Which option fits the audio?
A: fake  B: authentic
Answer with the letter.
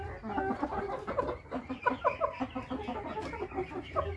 B